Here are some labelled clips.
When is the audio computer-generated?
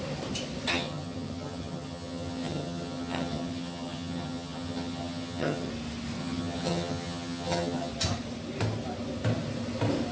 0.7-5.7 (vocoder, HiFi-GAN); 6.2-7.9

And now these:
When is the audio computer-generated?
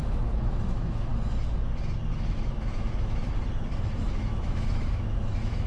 0.0-1.1 (autoencoder, DAC-VAE); 2.1-3.2; 4.0-5.7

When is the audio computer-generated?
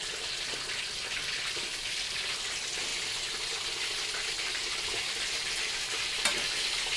none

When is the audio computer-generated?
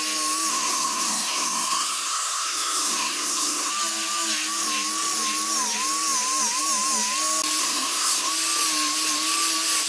0.5-3.7 (codec, SNAC); 7.6-8.3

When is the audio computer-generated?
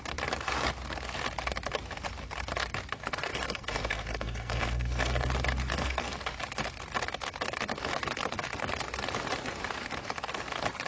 3.3-5.3 (codec, SNAC); 5.7-6.2